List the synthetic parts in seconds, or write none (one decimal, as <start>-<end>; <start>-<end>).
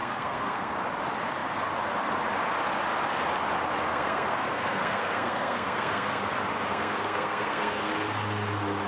0.0-0.7; 3.9-6.2; 6.7-7.9